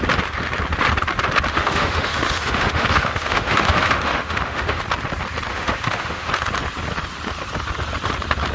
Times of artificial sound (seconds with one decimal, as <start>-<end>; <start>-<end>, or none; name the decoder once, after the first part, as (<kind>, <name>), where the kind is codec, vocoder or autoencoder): 1.5-4.8 (autoencoder, DAC-VAE); 5.5-6.3